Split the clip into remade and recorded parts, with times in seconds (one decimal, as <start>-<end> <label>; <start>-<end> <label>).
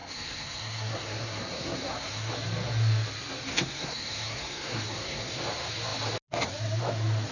0.0-2.3 remade; 2.3-3.5 recorded; 3.5-5.4 remade; 5.4-7.3 recorded